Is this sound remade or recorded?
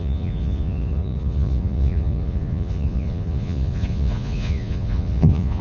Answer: remade